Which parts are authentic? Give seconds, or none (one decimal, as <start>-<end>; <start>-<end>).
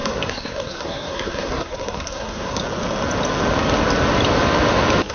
2.6-5.1